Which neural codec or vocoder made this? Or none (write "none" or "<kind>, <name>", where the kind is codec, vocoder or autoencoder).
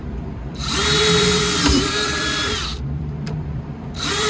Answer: vocoder, BigVGAN v2